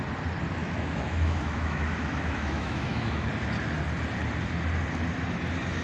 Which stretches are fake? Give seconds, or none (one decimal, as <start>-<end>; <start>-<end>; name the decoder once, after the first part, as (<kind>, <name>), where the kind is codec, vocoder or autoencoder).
0.6-3.3 (autoencoder, DAC-VAE)